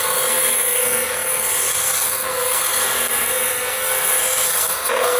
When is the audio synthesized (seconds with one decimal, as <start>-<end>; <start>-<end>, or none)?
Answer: 0.0-5.2